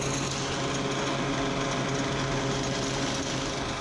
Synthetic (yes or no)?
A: no